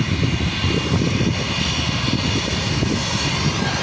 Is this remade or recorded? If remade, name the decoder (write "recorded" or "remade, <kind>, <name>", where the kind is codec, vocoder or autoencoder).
recorded